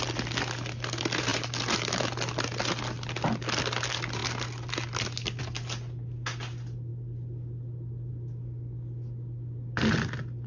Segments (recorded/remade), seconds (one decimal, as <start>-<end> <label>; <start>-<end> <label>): 0.0-1.3 recorded; 1.3-2.0 remade; 2.0-10.5 recorded